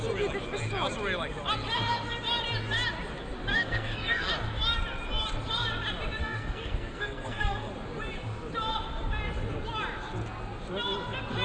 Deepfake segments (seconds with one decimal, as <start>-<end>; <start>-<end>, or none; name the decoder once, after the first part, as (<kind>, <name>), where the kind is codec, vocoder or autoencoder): 3.5-4.3 (codec, SNAC); 6.2-7.7